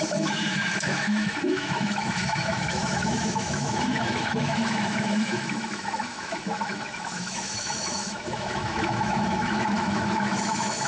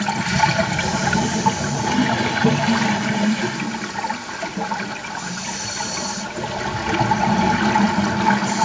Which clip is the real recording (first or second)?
second